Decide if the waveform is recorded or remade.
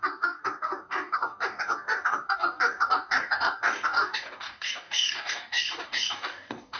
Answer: remade